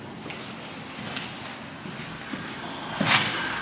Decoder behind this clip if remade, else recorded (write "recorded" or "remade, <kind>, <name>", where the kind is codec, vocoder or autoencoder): recorded